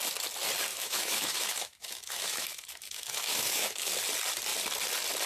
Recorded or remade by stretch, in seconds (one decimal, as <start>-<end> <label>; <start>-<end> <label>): 0.0-0.7 recorded; 0.7-3.9 remade; 3.9-5.3 recorded